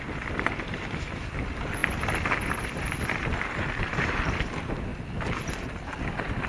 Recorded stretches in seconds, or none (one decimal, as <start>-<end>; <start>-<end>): 4.9-5.7